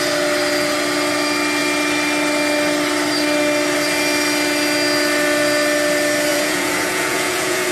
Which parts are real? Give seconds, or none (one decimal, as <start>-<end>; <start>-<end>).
0.0-6.3